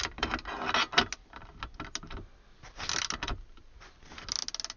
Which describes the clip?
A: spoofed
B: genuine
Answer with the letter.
B